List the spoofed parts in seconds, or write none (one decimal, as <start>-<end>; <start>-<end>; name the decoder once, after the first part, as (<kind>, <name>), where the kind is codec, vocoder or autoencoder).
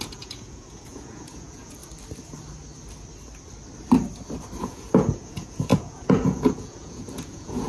0.0-1.8 (vocoder, Vocos); 4.6-7.7